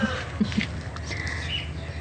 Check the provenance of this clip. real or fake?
real